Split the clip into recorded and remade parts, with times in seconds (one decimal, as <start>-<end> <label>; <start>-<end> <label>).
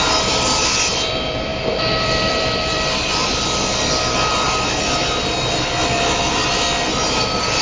0.0-7.6 remade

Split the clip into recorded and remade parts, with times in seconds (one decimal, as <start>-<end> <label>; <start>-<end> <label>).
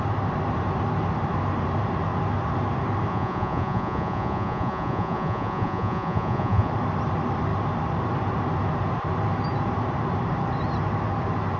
0.0-3.1 recorded; 3.1-6.7 remade; 6.7-11.6 recorded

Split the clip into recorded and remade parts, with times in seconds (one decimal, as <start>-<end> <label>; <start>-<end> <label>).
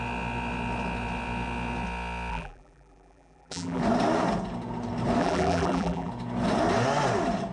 0.0-2.3 recorded; 2.3-3.8 remade; 3.8-5.2 recorded; 5.2-6.1 remade; 6.1-7.5 recorded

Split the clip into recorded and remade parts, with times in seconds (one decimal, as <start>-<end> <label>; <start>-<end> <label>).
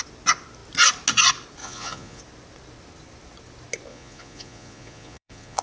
0.0-1.6 recorded; 1.6-2.2 remade; 2.2-3.9 recorded; 3.9-5.6 remade